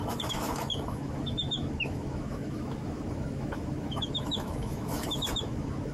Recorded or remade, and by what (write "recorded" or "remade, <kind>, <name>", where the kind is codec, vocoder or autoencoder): remade, autoencoder, DAC-VAE